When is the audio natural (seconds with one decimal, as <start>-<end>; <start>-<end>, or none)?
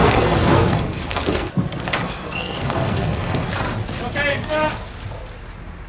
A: 3.5-4.3; 4.9-5.9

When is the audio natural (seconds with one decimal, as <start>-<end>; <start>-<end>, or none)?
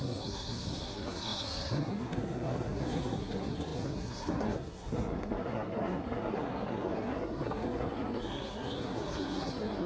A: none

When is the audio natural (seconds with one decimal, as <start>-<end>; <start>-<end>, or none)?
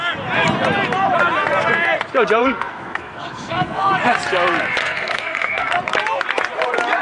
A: 0.0-2.4; 3.9-4.8; 5.8-7.0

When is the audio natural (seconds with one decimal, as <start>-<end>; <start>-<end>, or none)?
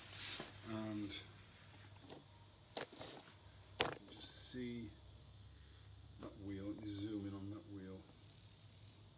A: 0.0-5.2; 6.3-9.2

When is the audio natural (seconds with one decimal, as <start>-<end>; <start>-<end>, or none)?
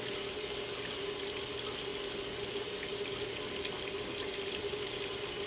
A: 0.0-5.5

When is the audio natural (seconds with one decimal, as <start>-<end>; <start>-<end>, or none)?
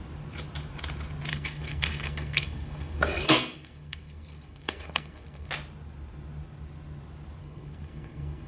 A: 0.0-1.3; 5.5-7.4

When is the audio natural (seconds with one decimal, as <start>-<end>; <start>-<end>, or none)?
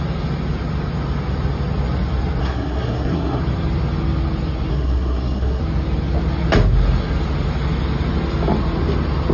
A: 0.0-2.4; 3.4-4.7; 5.6-9.3